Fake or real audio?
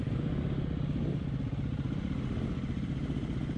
real